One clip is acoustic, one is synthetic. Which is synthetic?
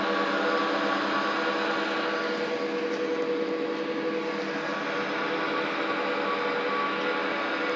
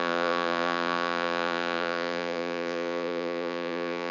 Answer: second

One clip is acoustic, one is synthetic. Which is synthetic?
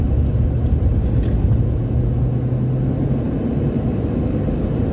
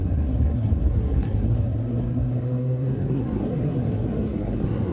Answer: second